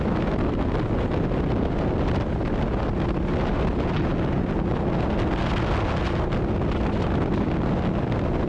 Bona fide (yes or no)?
yes